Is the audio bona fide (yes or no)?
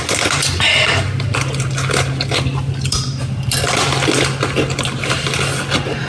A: yes